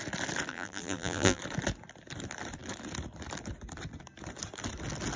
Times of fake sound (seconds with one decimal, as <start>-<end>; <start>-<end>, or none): 0.5-1.4